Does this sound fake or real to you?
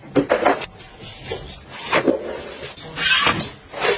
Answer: real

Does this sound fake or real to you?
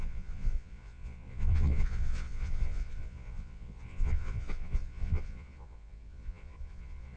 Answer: fake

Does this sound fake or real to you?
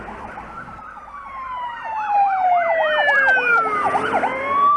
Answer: fake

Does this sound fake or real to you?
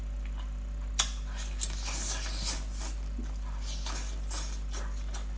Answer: real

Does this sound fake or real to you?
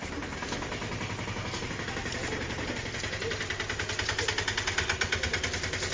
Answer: real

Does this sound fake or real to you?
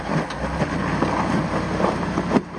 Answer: real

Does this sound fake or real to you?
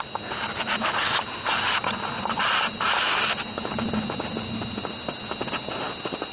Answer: real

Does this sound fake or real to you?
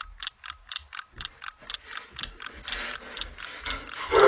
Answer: real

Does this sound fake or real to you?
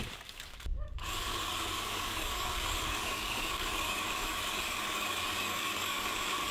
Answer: fake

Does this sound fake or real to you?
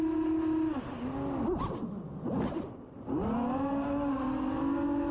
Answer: real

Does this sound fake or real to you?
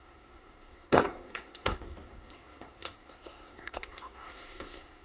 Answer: fake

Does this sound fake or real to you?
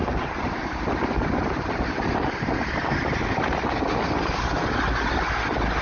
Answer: real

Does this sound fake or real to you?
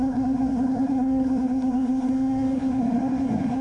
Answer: fake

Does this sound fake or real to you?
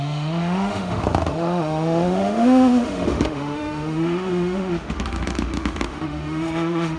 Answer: fake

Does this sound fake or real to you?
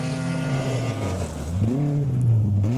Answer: real